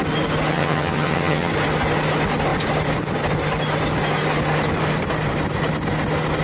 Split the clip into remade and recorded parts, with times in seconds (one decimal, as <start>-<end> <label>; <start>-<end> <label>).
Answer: 0.0-0.5 recorded; 0.5-1.5 remade; 1.5-6.4 recorded